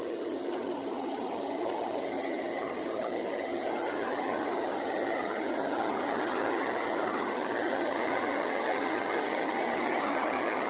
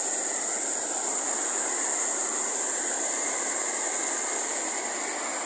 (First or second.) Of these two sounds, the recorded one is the second